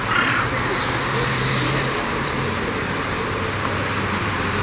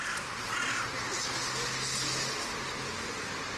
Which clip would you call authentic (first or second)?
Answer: second